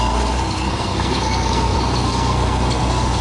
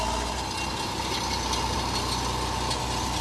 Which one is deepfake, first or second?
first